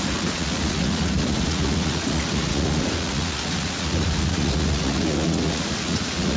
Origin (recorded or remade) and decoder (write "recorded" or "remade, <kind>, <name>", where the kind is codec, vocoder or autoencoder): remade, vocoder, Vocos